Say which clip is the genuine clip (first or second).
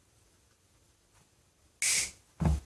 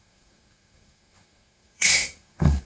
first